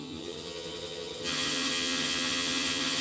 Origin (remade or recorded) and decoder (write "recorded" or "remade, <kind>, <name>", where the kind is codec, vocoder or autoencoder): remade, vocoder, HiFi-GAN